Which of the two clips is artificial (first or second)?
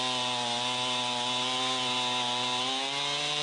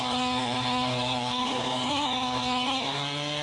second